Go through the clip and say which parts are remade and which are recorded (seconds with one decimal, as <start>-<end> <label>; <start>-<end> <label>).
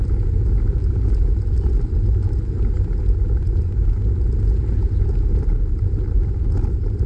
0.0-7.1 recorded